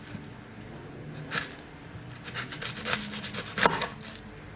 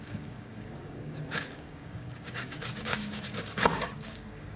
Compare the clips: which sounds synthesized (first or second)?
second